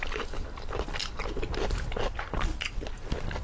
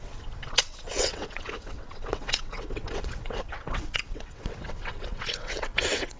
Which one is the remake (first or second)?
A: second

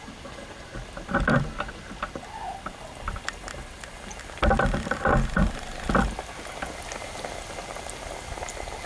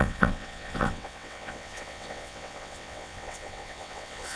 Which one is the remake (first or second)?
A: second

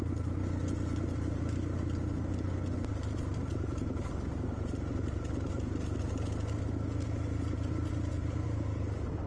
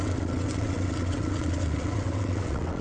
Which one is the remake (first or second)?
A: second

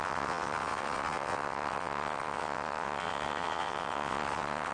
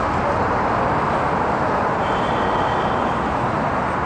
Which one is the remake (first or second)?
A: first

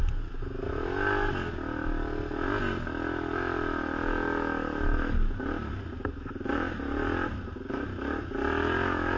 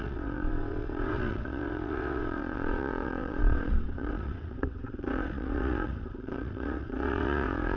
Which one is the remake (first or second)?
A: second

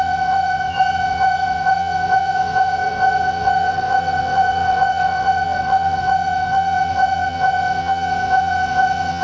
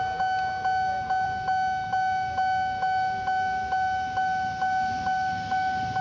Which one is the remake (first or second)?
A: first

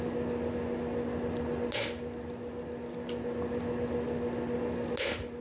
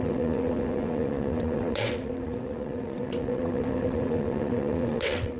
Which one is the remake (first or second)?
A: second